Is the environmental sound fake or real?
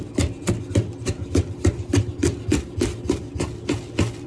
real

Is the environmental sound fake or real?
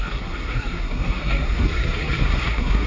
fake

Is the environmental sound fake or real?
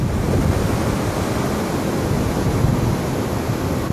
real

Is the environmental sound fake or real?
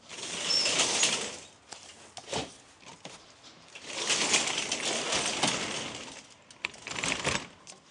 real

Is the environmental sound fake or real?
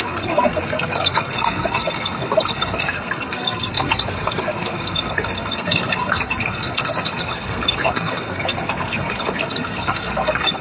fake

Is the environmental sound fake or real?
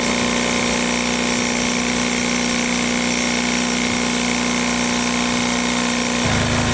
real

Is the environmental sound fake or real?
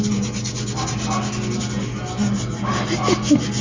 real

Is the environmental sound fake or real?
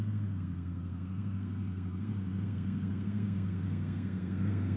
fake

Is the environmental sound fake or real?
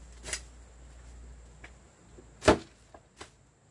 real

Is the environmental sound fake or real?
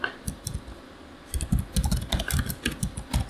real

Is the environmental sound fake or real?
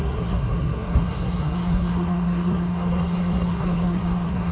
fake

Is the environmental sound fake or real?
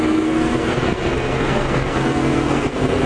fake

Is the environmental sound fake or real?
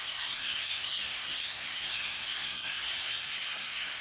fake